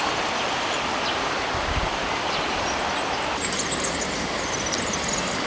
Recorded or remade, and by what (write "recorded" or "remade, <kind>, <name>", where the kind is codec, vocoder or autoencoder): recorded